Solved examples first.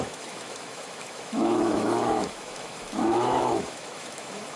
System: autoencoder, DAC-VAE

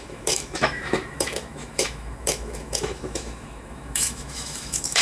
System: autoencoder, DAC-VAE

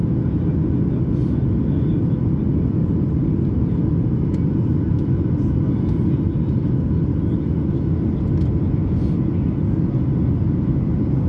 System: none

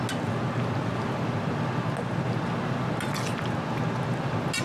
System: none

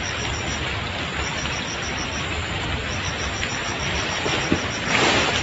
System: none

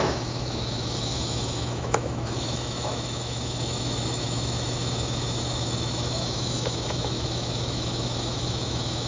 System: autoencoder, DAC-VAE